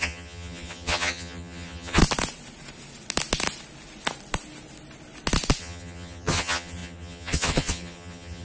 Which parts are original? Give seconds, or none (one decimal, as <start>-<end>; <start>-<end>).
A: 2.0-5.6